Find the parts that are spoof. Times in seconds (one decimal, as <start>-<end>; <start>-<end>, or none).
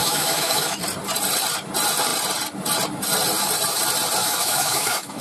0.0-0.8; 4.2-5.2